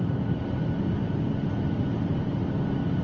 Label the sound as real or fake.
real